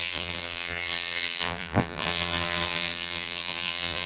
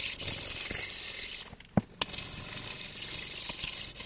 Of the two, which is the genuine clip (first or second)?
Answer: second